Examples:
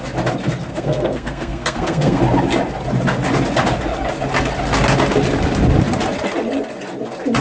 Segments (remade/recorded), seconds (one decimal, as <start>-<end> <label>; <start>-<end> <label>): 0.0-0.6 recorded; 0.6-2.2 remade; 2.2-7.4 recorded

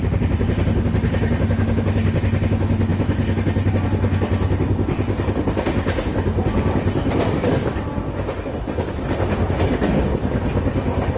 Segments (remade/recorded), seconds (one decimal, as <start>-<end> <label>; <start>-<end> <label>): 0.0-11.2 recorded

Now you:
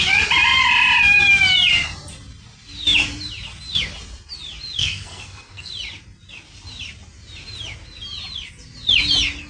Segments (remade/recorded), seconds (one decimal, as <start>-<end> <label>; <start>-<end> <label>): 0.0-4.8 recorded; 4.8-5.7 remade; 5.7-9.5 recorded

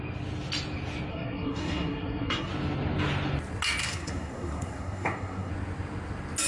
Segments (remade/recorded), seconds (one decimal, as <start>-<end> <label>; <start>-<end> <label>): 0.0-1.1 recorded; 1.1-2.5 remade; 2.5-3.8 recorded; 3.8-5.5 remade; 5.5-6.5 recorded